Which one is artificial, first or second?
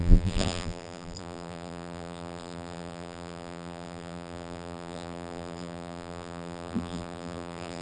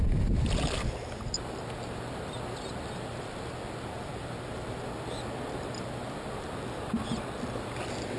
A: first